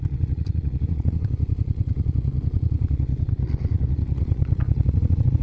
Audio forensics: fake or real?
fake